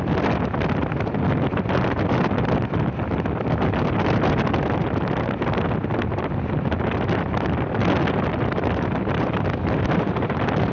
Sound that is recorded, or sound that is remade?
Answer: recorded